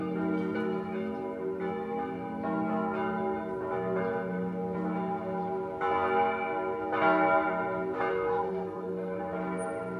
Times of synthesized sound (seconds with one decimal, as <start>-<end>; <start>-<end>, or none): 8.1-9.2